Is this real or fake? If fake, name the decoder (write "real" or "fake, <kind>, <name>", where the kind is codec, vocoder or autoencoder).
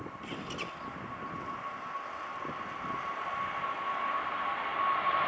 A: real